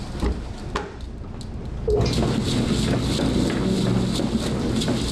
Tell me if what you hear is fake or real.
real